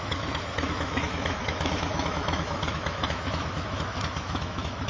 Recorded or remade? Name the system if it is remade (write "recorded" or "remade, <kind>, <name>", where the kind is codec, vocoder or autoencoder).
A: remade, autoencoder, DAC-VAE